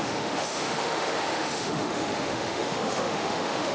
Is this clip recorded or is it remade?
remade